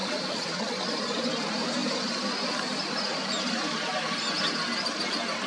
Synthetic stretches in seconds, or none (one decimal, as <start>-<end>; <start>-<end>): 0.0-0.9